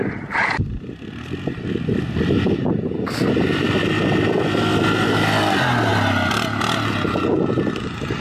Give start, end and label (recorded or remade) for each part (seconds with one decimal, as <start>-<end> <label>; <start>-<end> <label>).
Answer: 0.0-8.2 recorded